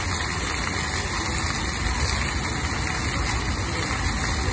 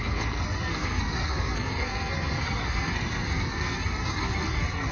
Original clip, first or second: first